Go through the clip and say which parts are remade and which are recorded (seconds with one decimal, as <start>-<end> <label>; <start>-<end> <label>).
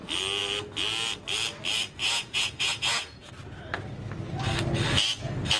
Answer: 0.0-2.0 recorded; 2.0-3.3 remade; 3.3-5.6 recorded